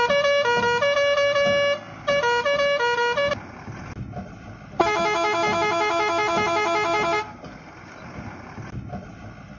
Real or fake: real